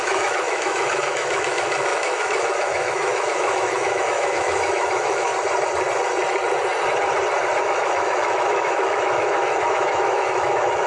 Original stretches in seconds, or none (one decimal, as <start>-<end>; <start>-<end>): 5.3-7.6